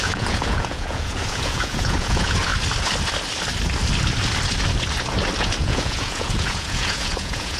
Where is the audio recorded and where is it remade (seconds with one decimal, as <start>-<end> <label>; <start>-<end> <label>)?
0.0-2.5 remade; 2.5-5.6 recorded; 5.6-7.6 remade